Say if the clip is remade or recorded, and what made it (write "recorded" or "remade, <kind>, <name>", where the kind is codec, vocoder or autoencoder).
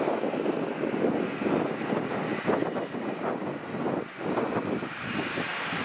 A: recorded